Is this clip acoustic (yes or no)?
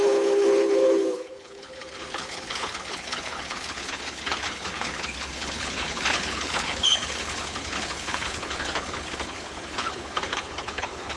no